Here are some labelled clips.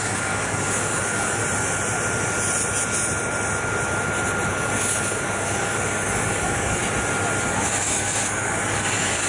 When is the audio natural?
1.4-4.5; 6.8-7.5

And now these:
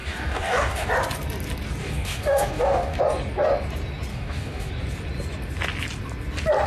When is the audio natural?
0.9-1.8; 3.0-4.1; 4.7-6.7

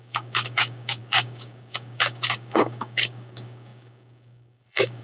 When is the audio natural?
none

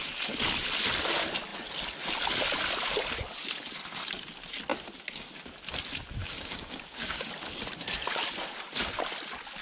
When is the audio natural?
0.0-6.2; 7.3-9.6

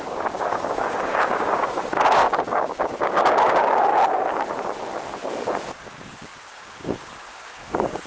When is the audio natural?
3.9-5.8